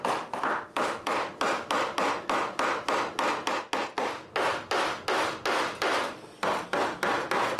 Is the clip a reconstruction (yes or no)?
no